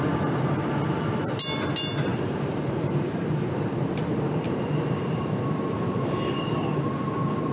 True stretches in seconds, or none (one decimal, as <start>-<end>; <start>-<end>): 0.0-2.1; 6.6-7.5